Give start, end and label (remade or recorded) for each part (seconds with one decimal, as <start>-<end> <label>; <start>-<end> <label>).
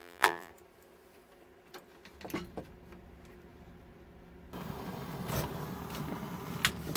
0.0-0.5 remade; 0.5-7.0 recorded